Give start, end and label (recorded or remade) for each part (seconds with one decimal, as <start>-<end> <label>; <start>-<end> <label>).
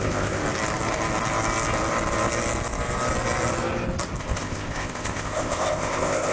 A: 0.0-0.4 remade; 0.4-4.2 recorded; 4.2-6.3 remade